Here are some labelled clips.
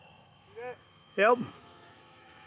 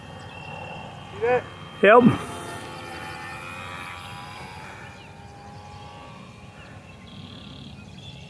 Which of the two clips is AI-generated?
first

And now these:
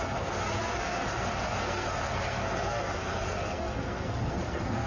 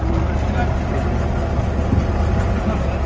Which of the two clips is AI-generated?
first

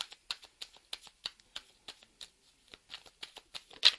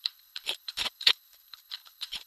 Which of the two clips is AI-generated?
second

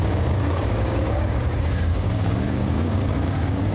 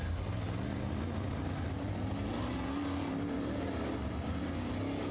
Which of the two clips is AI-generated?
first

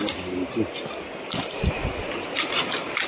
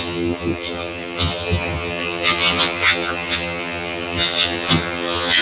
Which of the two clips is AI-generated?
second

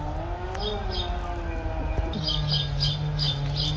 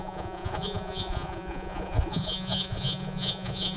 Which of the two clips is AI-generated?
second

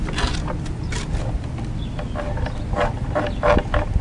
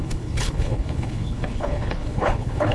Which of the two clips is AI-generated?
second